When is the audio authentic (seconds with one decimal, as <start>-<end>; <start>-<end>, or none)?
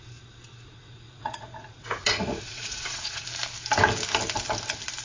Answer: 0.0-0.5; 3.2-5.0